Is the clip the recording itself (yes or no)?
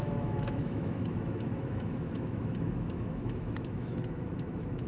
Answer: no